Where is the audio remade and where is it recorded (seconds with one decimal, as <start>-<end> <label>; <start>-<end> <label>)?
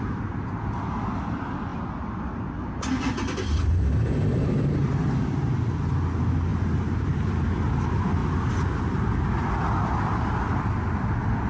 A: 0.0-6.5 recorded; 6.5-7.4 remade; 7.4-8.2 recorded; 8.2-8.8 remade; 8.8-11.5 recorded